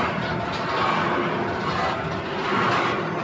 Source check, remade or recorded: recorded